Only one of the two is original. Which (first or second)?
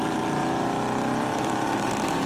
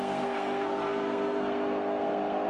first